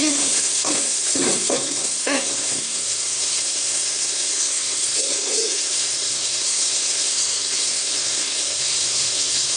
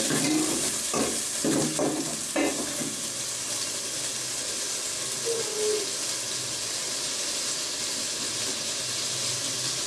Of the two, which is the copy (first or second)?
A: first